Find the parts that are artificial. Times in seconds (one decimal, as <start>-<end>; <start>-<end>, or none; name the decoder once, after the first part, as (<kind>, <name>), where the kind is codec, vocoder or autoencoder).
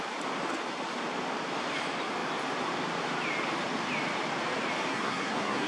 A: 4.9-5.7 (codec, SNAC)